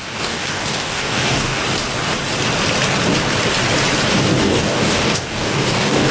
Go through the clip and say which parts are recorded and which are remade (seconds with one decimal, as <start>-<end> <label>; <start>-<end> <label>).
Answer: 0.0-1.6 remade; 1.6-4.4 recorded; 4.4-6.1 remade